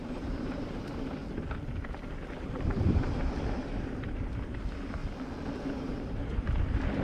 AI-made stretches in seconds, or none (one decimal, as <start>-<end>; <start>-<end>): 0.0-1.2; 2.1-5.0; 5.6-7.0